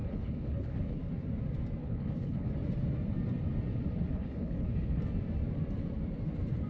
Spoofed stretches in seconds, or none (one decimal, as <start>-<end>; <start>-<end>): 0.0-1.1; 1.8-2.5; 4.1-5.0